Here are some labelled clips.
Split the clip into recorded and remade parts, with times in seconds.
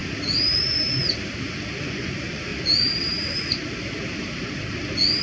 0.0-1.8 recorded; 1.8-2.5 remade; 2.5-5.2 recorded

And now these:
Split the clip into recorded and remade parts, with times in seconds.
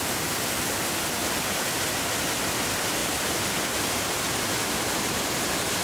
0.0-5.8 recorded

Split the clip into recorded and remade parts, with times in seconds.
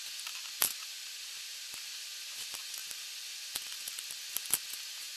0.0-5.2 recorded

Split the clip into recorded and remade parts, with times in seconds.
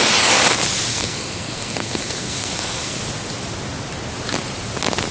0.0-0.9 recorded; 0.9-3.0 remade; 3.0-5.1 recorded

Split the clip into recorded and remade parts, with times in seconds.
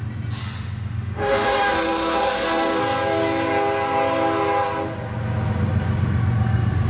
0.0-0.4 recorded; 0.4-2.8 remade; 2.8-6.9 recorded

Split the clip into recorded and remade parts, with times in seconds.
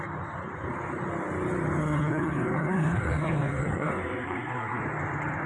0.0-1.8 recorded; 1.8-4.8 remade; 4.8-5.5 recorded